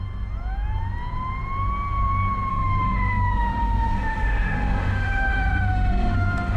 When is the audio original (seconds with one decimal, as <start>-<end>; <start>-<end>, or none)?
0.0-2.5